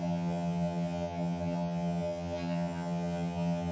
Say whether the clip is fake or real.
fake